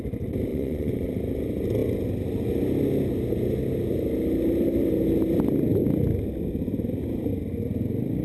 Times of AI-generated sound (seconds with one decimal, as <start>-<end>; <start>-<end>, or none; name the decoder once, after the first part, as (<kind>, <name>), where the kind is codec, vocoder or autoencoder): 0.5-1.1 (vocoder, Vocos)